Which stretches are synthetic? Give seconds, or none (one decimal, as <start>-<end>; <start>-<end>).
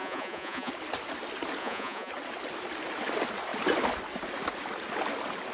0.0-0.7; 1.6-2.1